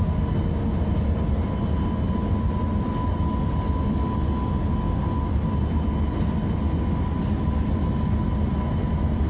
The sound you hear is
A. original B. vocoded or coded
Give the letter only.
A